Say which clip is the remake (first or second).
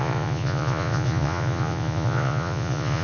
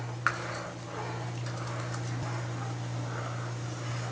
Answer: first